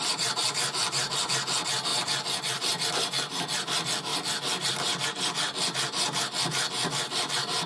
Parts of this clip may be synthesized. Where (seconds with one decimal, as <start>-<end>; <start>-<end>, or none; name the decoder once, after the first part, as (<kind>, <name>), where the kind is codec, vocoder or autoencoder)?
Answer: none